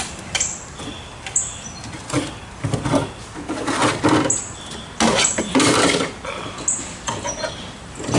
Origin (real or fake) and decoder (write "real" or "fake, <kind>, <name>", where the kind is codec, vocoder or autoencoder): real